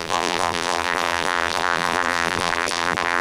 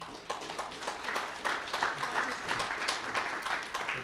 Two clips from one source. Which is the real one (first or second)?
second